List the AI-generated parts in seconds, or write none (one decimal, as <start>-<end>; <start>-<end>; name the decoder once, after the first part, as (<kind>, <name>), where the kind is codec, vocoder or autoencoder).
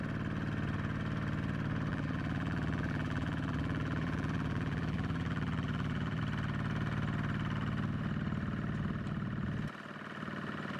1.9-6.2 (vocoder, BigVGAN v2)